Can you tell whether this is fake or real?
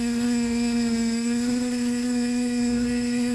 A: fake